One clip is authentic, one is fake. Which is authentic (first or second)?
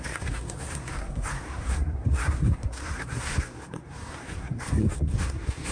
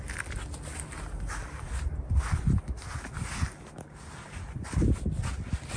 second